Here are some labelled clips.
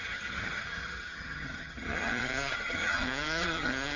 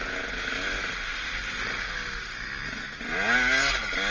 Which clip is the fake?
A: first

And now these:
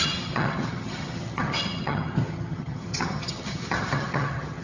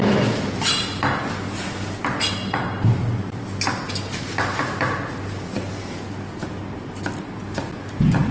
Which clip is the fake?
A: first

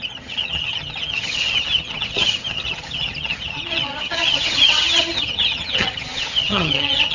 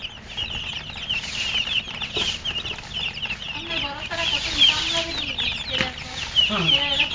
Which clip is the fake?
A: first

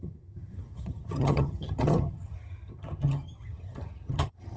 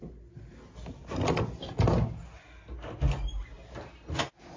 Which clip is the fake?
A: first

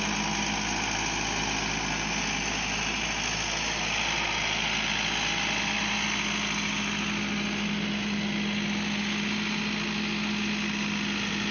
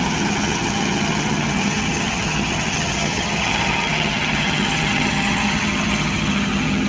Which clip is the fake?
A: second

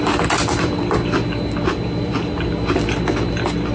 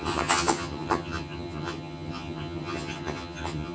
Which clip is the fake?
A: second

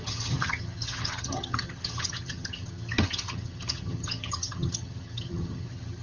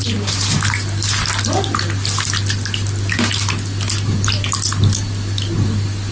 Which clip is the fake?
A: first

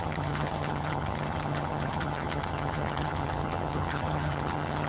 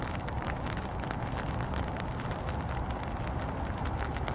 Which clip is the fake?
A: first